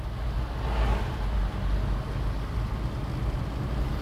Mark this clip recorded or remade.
recorded